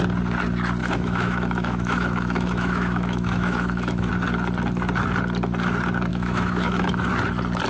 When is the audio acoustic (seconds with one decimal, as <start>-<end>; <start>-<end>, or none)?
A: 0.0-0.8; 4.1-6.1; 7.1-7.7